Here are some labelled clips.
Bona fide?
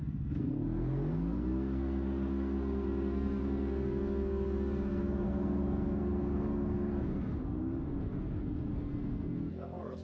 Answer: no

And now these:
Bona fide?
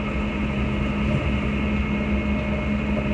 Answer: yes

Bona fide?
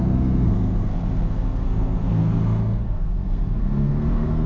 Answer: no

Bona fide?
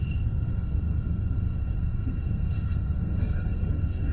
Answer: no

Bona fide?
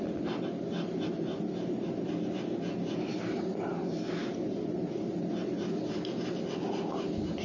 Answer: yes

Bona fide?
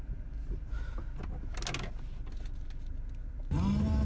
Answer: yes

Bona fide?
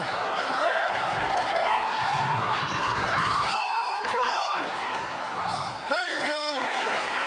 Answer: no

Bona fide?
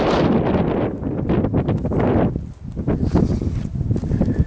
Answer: yes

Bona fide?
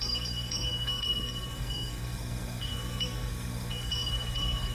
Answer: no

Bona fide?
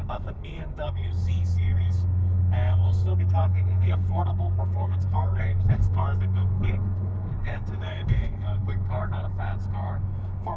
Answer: no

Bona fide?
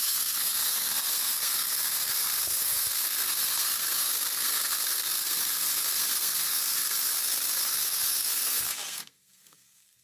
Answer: no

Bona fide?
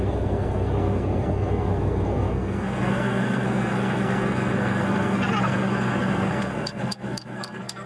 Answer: no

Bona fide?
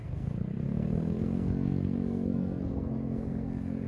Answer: no